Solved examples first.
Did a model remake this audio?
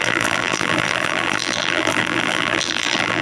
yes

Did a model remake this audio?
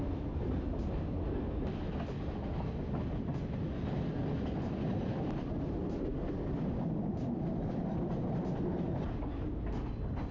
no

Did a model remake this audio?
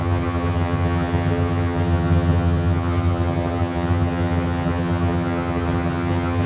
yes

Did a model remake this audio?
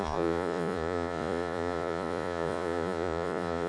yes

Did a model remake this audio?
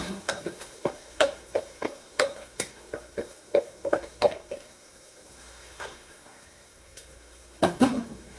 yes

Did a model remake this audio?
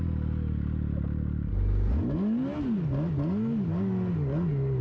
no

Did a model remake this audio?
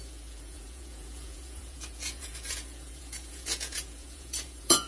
yes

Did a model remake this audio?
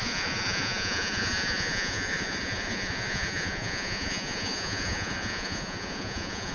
yes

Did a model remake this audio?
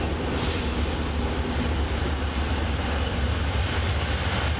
no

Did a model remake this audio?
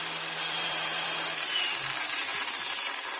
yes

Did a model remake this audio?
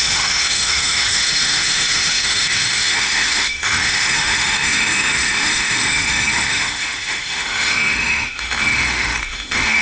yes